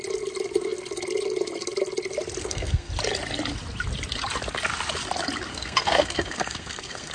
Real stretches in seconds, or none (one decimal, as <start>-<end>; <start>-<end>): 0.0-2.4; 2.9-5.5